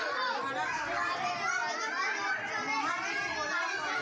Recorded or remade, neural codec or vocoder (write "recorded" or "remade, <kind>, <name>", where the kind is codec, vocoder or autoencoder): recorded